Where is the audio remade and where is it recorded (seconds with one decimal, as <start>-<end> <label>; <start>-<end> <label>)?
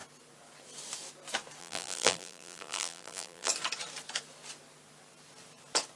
0.0-1.6 recorded; 1.6-3.5 remade; 3.5-6.0 recorded